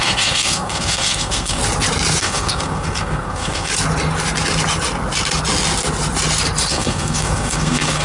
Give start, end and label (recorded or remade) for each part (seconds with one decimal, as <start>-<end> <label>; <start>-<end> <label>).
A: 0.0-1.6 remade; 1.6-2.2 recorded; 2.2-3.7 remade; 3.7-6.7 recorded; 6.7-8.0 remade